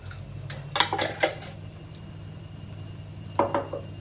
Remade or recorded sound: recorded